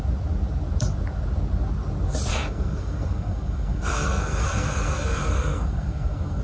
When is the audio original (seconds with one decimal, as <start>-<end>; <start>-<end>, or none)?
0.0-2.3